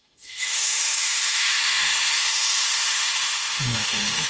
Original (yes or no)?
no